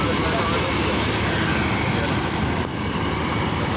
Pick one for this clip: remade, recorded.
recorded